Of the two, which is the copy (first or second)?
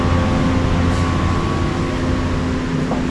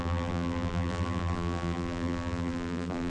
second